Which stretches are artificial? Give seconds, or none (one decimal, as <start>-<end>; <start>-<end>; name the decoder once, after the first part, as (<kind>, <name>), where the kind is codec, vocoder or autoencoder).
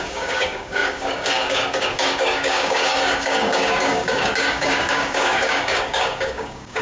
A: 0.0-6.8 (codec, DAC)